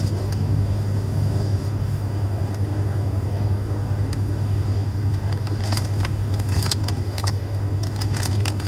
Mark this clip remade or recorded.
remade